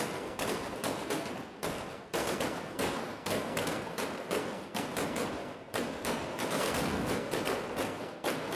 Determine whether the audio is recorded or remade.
remade